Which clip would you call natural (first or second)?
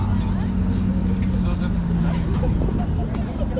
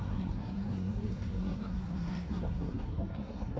first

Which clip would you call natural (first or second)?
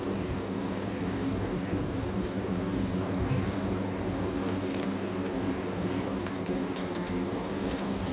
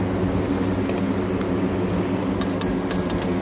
second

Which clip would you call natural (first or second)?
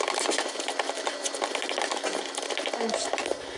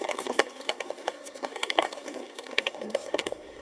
first